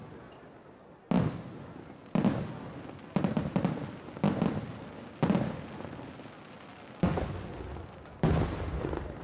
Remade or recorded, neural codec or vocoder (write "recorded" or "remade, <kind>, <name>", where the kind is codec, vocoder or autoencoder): recorded